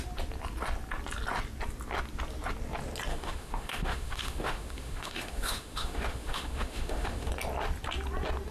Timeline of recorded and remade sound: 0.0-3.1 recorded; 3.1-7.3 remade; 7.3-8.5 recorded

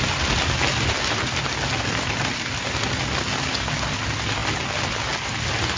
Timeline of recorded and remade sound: 0.0-5.8 recorded

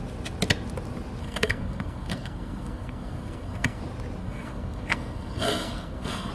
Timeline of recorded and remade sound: 0.0-1.2 recorded; 1.2-3.8 remade; 3.8-4.2 recorded; 4.2-6.3 remade